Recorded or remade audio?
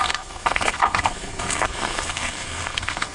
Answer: remade